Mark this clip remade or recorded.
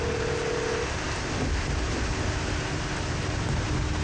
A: recorded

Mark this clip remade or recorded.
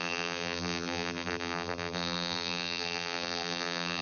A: remade